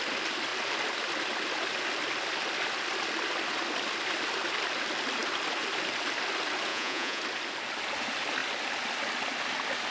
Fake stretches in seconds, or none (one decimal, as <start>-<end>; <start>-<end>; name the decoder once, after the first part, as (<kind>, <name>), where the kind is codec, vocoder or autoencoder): 6.7-7.2 (vocoder, Vocos)